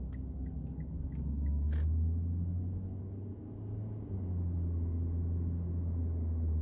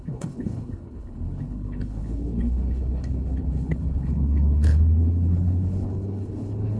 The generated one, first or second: second